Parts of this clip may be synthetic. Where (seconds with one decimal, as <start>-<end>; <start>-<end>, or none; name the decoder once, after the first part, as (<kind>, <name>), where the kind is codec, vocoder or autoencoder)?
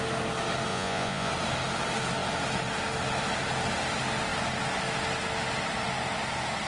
0.7-1.3 (vocoder, Vocos)